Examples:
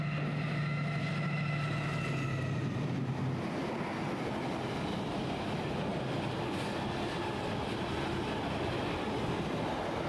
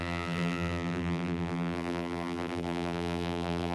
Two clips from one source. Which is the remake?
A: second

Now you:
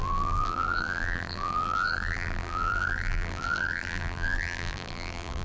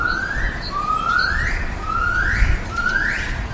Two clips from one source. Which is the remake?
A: first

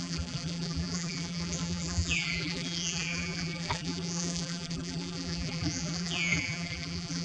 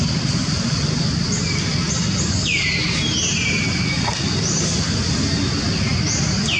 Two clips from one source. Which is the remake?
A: first